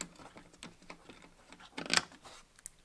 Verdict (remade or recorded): recorded